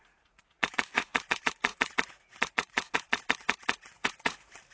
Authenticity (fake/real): fake